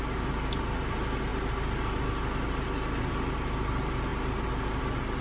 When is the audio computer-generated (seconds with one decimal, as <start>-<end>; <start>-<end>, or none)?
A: none